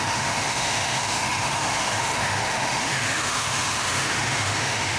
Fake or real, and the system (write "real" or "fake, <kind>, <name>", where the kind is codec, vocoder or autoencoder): fake, autoencoder, DAC-VAE